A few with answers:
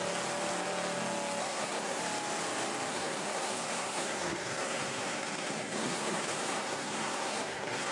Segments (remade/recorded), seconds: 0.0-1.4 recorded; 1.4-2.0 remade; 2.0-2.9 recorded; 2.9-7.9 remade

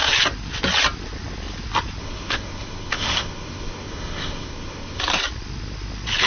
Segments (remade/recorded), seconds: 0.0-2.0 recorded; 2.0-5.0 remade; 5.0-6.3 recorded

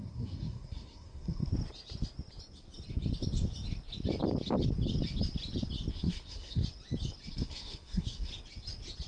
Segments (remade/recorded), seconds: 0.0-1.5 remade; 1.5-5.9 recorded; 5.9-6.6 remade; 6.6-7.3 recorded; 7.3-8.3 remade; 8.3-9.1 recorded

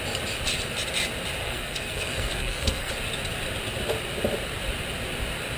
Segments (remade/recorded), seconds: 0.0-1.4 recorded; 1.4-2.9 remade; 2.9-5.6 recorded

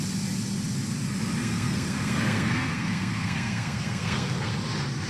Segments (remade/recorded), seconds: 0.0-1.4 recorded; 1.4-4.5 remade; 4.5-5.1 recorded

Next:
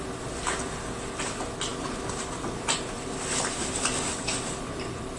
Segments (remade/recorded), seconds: 0.0-5.2 recorded

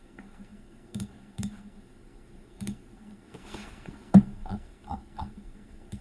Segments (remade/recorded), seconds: 0.0-6.0 remade